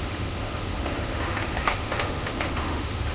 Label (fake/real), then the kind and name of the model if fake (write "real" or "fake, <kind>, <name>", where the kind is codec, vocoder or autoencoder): fake, autoencoder, DAC-VAE